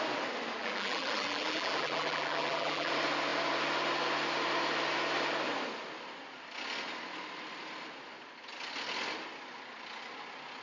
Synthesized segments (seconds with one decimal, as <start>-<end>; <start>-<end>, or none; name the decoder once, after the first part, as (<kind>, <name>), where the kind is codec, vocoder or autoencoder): 0.6-2.9 (vocoder, BigVGAN v2)